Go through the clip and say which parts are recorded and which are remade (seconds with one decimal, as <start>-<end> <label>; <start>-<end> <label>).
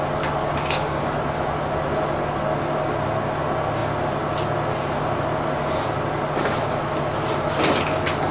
0.0-0.4 recorded; 0.4-1.2 remade; 1.2-8.3 recorded